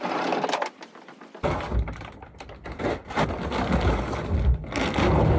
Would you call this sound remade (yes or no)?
no